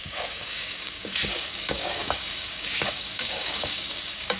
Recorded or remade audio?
remade